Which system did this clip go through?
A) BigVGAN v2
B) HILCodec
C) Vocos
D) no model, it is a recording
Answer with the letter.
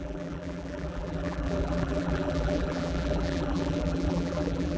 A